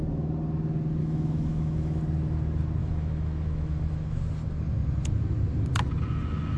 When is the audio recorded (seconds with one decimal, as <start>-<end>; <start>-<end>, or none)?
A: 0.0-1.0; 2.0-2.8; 4.2-6.6